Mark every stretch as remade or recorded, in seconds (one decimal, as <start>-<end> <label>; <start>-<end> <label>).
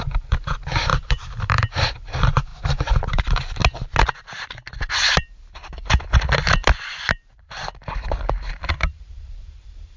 0.0-3.6 remade; 3.6-7.3 recorded; 7.3-10.0 remade